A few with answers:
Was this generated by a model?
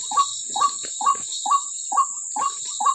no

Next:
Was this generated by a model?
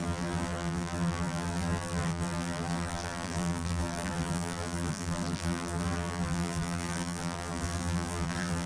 yes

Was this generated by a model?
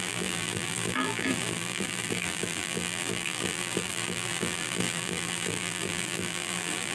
yes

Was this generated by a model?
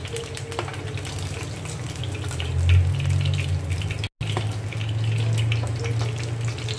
no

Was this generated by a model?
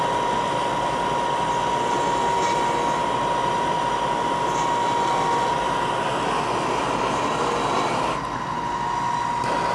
no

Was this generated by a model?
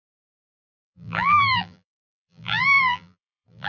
yes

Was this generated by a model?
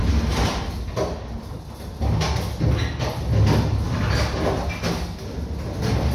no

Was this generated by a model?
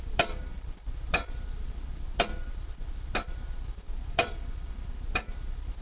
yes